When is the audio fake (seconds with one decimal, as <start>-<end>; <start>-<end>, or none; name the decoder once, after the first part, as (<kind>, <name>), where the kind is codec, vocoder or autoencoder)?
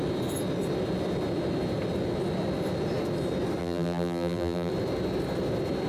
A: 3.6-4.7 (vocoder, BigVGAN v2)